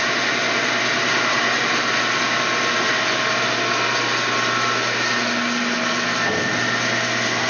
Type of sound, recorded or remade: recorded